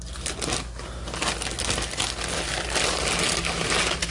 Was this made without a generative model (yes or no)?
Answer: yes